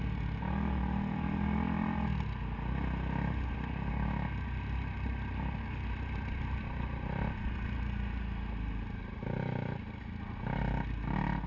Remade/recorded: recorded